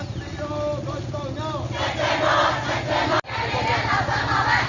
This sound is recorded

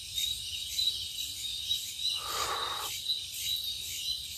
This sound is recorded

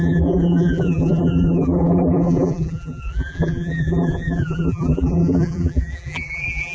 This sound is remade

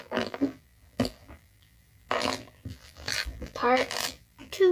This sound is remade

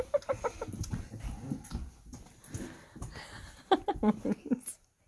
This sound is recorded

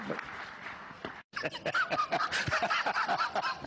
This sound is recorded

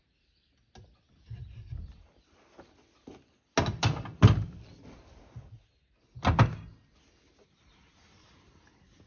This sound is recorded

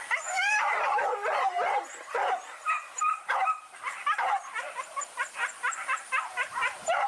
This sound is remade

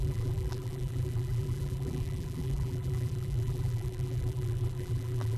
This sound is remade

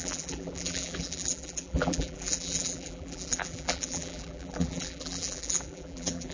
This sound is remade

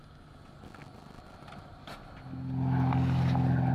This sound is recorded